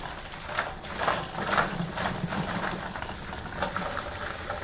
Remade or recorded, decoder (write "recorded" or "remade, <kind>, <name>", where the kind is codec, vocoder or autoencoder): recorded